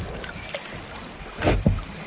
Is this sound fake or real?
real